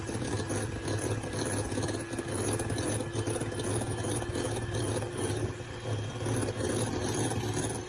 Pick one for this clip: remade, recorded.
recorded